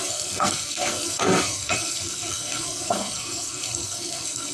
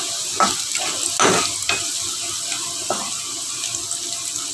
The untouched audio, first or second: second